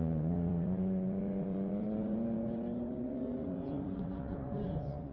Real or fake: fake